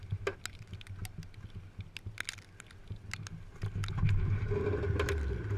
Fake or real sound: real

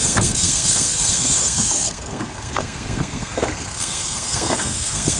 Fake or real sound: fake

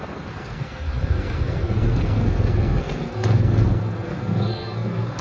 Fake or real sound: fake